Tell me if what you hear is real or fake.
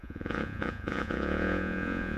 fake